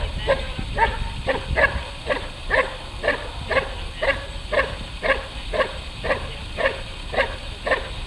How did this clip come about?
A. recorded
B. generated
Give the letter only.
A